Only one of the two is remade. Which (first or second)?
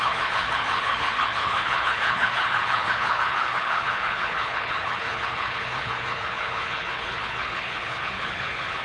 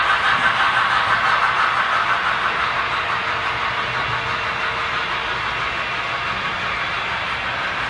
first